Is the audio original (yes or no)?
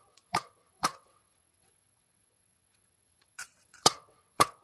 no